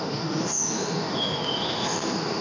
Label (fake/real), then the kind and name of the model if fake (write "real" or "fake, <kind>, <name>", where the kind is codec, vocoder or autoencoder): fake, autoencoder, DAC-VAE